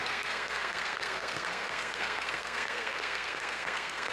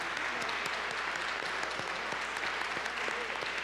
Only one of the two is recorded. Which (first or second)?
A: second